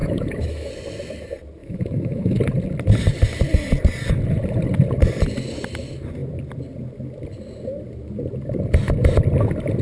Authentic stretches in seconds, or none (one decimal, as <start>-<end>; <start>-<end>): 0.7-1.6; 2.4-9.8